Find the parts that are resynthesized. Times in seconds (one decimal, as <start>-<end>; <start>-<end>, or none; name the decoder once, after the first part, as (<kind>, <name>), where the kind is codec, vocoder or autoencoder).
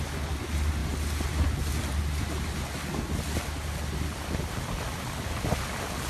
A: none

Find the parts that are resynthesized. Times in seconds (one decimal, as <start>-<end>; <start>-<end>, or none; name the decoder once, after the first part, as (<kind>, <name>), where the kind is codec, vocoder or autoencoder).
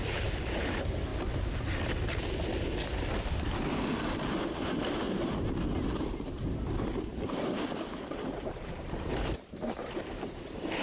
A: 0.0-1.1 (vocoder, BigVGAN v2); 6.1-10.8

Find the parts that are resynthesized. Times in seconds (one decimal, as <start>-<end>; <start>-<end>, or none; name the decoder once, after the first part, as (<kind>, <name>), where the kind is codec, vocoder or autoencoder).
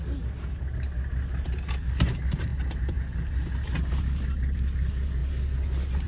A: none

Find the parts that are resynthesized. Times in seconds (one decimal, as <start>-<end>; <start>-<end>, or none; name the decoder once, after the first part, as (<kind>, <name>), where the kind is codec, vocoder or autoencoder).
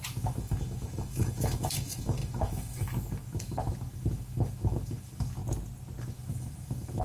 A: 0.0-5.4 (autoencoder, DAC-VAE); 6.0-7.0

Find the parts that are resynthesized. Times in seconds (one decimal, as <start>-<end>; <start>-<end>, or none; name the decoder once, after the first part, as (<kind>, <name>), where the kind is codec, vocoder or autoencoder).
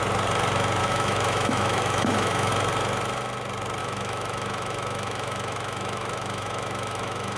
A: 0.8-2.5 (autoencoder, DAC-VAE); 3.8-7.4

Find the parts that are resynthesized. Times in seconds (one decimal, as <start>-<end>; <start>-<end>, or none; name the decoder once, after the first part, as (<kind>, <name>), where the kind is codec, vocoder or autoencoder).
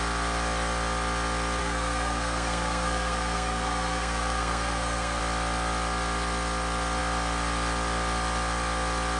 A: 1.6-5.2 (codec, SNAC)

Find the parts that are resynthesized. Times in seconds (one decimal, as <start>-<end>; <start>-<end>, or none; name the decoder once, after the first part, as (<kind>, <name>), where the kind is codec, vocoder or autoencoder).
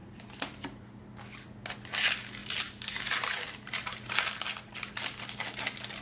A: 0.0-1.0 (vocoder, BigVGAN v2); 2.4-4.7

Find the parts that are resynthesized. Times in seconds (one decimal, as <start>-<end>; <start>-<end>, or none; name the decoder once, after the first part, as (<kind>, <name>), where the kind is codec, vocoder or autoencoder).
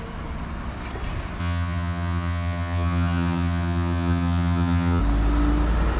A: 1.4-5.0 (vocoder, HiFi-GAN)